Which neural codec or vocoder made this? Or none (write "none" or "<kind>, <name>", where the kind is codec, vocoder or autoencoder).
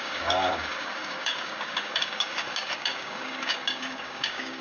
codec, DAC